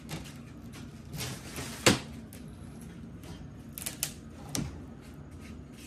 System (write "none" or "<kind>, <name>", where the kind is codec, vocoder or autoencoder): none